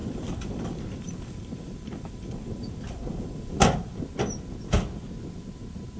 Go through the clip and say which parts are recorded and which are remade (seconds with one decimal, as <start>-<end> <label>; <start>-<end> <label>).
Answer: 0.0-3.6 remade; 3.6-6.0 recorded